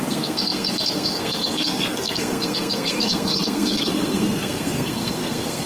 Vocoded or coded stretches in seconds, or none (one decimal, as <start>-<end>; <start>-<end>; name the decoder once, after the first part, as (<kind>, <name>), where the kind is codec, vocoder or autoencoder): 0.0-5.7 (codec, SNAC)